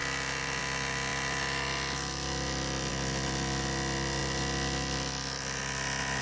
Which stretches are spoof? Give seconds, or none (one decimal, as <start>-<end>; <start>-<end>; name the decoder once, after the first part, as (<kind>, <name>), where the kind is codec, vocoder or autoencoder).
none